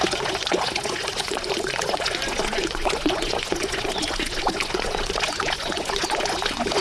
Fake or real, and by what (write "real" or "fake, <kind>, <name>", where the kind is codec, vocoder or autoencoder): fake, vocoder, Vocos